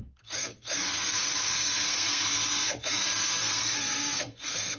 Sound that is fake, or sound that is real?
fake